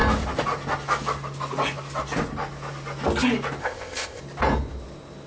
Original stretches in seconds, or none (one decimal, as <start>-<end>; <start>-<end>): 0.0-3.6; 4.2-5.3